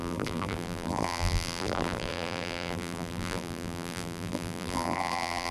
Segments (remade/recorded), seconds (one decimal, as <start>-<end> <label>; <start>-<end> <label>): 0.0-5.5 remade